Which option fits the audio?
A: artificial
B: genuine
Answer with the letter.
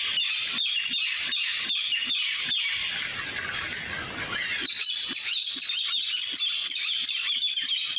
B